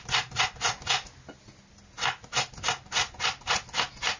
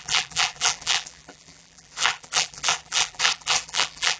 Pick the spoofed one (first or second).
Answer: second